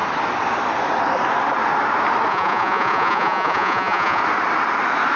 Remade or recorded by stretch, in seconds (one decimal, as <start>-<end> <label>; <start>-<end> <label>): 0.0-2.3 recorded; 2.3-4.2 remade; 4.2-5.2 recorded